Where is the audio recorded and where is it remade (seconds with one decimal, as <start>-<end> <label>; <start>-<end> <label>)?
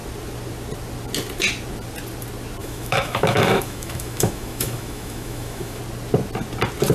0.0-2.6 recorded; 2.6-5.8 remade; 5.8-6.9 recorded